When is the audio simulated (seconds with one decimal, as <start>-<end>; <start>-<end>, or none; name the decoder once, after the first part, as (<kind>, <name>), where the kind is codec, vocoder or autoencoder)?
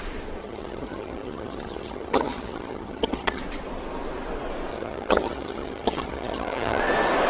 0.4-3.4 (vocoder, HiFi-GAN); 4.7-6.8